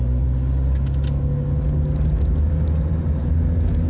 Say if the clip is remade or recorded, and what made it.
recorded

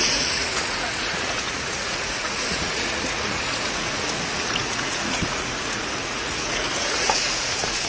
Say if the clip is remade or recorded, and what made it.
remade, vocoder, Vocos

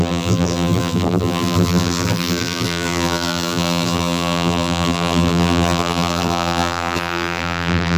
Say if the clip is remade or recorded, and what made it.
remade, vocoder, BigVGAN v2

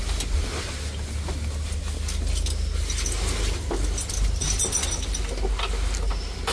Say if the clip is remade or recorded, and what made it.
recorded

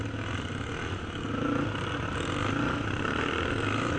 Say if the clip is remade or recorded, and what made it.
recorded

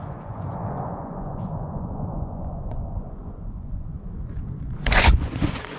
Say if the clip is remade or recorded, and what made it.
remade, vocoder, Vocos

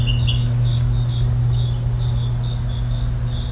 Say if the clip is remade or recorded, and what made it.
recorded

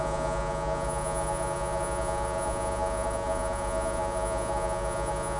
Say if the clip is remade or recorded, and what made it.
remade, vocoder, Vocos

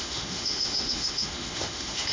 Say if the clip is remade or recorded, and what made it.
remade, autoencoder, DAC-VAE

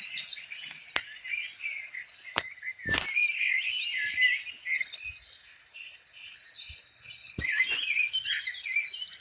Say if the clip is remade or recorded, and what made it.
recorded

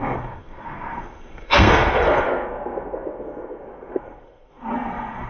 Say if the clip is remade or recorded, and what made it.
remade, codec, SNAC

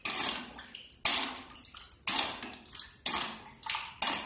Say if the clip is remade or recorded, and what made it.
recorded